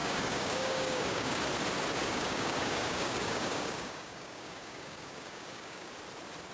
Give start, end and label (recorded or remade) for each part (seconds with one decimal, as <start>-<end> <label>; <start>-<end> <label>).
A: 0.0-1.4 remade; 1.4-2.0 recorded; 2.0-5.9 remade; 5.9-6.5 recorded